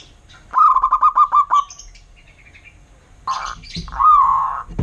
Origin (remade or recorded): recorded